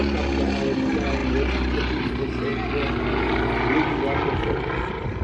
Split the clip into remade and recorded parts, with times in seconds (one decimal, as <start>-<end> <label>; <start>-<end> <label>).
0.0-5.2 recorded